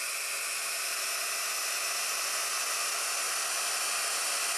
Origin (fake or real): real